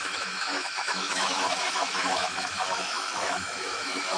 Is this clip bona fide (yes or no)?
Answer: no